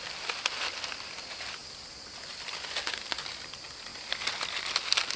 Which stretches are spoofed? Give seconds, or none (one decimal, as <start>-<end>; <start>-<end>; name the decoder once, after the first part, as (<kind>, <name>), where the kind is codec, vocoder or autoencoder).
3.9-5.2 (vocoder, BigVGAN v2)